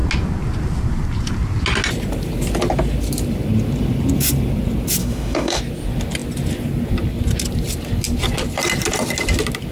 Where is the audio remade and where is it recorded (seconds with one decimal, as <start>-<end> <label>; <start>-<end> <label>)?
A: 0.0-5.0 recorded; 5.0-5.6 remade; 5.6-9.7 recorded